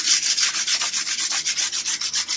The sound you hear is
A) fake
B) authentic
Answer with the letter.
B